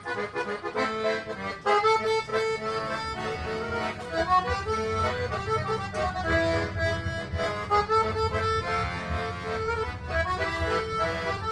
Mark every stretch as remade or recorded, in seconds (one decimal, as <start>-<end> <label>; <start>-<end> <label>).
0.0-11.5 recorded